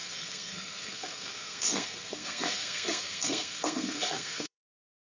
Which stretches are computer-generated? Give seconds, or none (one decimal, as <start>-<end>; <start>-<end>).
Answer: 0.0-5.0